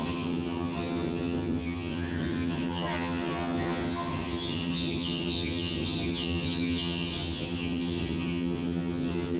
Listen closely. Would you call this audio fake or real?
fake